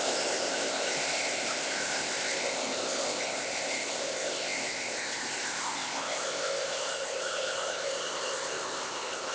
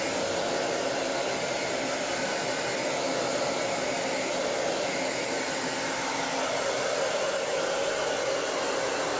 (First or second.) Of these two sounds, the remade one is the first